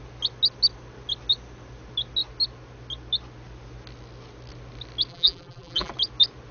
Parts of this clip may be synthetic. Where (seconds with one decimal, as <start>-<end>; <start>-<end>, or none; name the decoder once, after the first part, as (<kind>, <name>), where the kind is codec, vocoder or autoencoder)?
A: 5.1-5.9 (vocoder, BigVGAN v2)